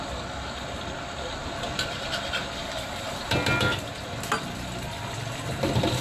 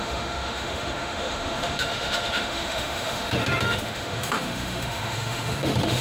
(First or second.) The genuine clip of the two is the first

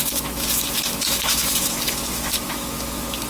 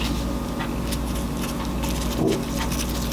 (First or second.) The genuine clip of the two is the second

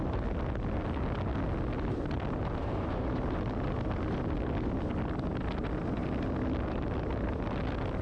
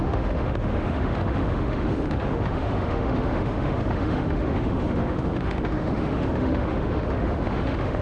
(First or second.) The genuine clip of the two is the first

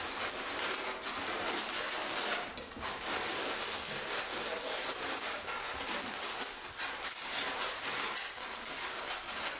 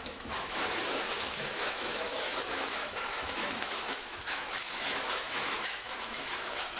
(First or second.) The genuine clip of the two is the first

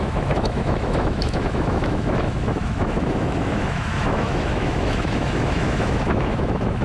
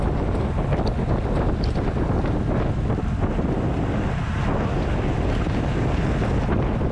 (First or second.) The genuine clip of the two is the second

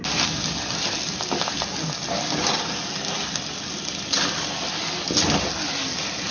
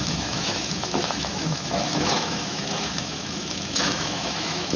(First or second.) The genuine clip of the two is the first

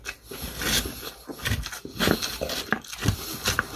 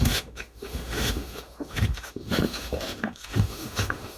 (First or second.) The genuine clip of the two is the first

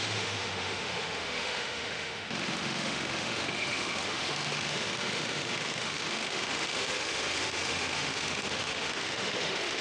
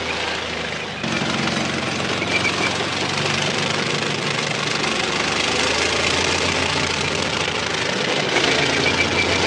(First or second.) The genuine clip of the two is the second